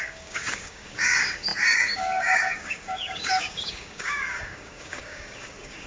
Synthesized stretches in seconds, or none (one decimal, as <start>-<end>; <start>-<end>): 0.0-5.9